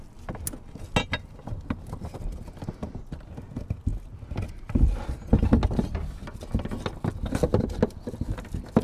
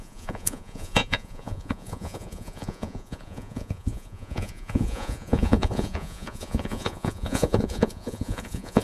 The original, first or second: first